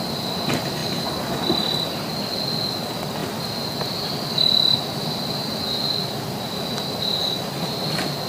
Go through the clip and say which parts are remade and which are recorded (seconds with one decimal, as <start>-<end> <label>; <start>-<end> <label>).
0.0-8.3 recorded